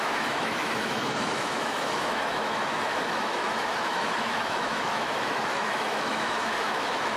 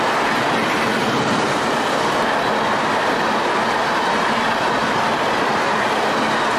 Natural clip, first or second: second